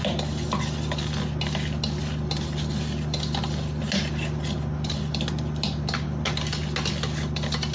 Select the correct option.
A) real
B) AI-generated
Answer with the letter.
A